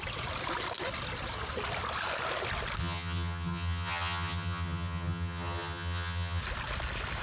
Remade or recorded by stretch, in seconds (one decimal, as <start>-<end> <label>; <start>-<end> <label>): 0.0-2.8 recorded; 2.8-6.4 remade; 6.4-7.2 recorded